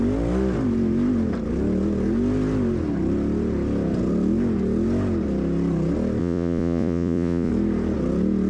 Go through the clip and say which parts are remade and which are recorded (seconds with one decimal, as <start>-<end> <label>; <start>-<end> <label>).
0.0-6.2 recorded; 6.2-7.5 remade; 7.5-8.5 recorded